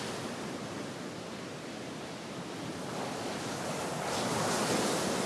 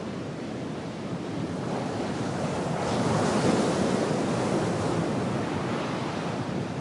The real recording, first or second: first